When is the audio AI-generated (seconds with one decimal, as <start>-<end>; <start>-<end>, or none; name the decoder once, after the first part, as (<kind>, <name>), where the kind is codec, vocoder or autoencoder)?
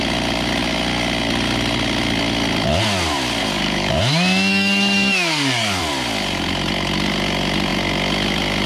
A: 3.4-4.0 (codec, DAC); 4.5-5.8